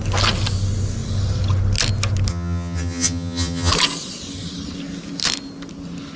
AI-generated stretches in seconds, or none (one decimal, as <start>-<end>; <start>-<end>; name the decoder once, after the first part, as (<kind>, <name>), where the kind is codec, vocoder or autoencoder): 2.3-3.7 (vocoder, HiFi-GAN)